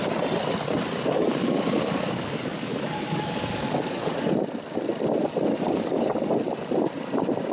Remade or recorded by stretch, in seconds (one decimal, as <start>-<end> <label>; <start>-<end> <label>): 0.0-0.8 recorded; 0.8-4.3 remade; 4.3-5.5 recorded; 5.5-6.3 remade; 6.3-7.5 recorded

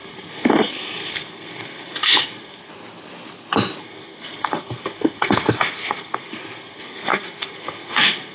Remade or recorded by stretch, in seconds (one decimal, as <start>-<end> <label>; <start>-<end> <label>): 0.0-2.7 remade; 2.7-3.8 recorded; 3.8-8.3 remade

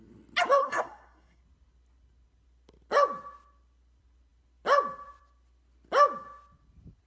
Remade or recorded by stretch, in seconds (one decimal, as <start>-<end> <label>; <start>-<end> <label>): 0.0-0.6 recorded; 0.6-1.4 remade; 1.4-7.1 recorded